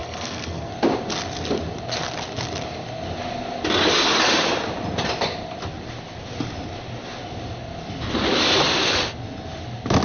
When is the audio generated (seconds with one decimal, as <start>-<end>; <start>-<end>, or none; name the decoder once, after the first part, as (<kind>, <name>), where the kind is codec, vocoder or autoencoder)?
0.0-0.7 (codec, SNAC)